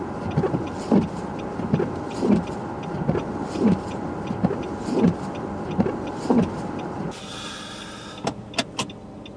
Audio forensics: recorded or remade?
recorded